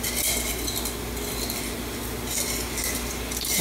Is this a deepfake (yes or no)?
no